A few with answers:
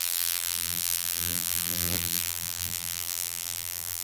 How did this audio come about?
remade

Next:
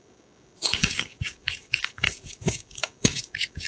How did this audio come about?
remade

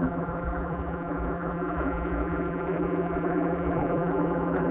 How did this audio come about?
remade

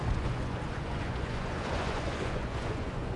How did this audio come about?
remade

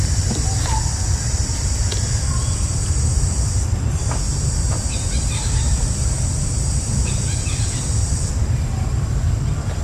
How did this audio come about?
remade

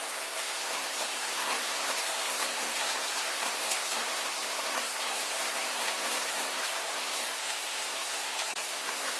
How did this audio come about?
remade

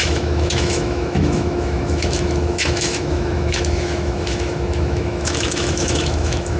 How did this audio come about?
remade